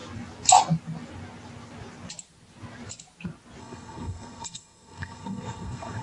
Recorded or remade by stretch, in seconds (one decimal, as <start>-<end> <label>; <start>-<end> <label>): 0.0-3.6 recorded; 3.6-6.0 remade